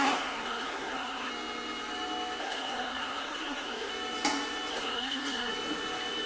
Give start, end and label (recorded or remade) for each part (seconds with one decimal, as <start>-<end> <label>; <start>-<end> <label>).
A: 0.0-1.3 remade; 1.3-2.4 recorded; 2.4-3.9 remade; 3.9-4.7 recorded; 4.7-5.5 remade; 5.5-6.3 recorded